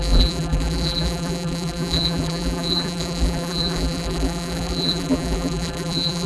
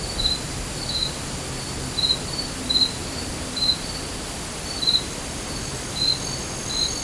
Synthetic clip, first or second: first